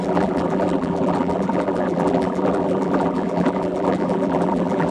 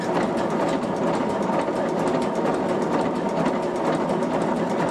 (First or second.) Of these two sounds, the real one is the second